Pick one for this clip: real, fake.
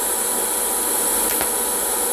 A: real